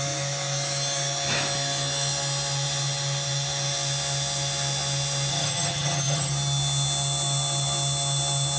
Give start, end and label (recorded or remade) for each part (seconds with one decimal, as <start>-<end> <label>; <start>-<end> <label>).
0.0-5.3 recorded; 5.3-6.3 remade; 6.3-8.6 recorded